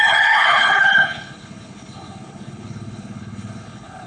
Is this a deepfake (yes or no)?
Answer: yes